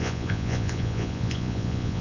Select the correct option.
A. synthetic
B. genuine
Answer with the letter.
A